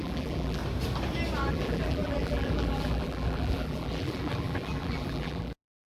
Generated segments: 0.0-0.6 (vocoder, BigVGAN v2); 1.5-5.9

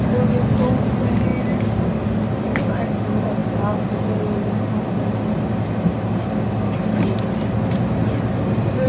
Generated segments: none

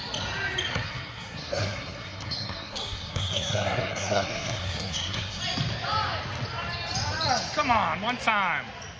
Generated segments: 0.7-5.4 (codec, SNAC)